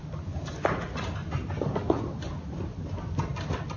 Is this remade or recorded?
recorded